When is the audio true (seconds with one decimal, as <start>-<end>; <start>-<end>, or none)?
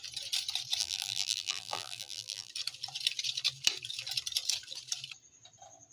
0.0-0.8; 2.5-5.9